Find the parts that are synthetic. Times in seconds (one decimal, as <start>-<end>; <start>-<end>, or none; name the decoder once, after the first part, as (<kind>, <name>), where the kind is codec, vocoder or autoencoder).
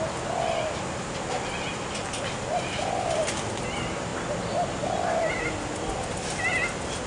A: none